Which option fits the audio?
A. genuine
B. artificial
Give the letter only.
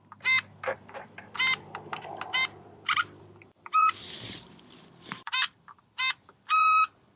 B